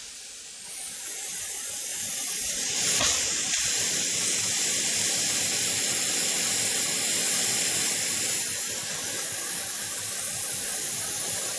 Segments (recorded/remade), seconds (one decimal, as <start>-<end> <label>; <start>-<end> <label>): 0.0-11.6 recorded